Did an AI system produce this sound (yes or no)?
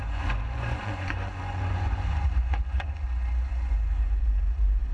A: yes